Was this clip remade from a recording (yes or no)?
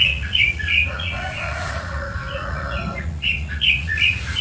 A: yes